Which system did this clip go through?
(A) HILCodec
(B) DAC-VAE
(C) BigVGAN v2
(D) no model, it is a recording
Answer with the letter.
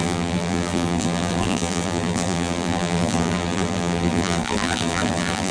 C